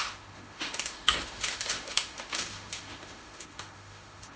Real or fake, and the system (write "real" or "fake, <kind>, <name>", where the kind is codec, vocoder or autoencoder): fake, autoencoder, DAC-VAE